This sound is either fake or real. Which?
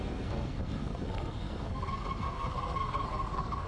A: fake